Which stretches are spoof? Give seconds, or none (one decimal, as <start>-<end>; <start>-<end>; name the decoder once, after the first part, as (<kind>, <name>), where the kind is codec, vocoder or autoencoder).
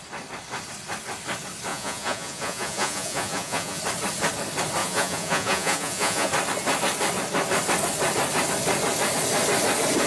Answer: 1.7-3.8 (vocoder, Vocos); 4.8-6.3